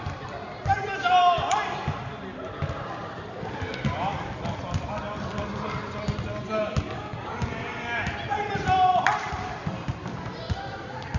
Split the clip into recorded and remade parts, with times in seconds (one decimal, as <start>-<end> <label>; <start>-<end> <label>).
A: 0.0-11.2 recorded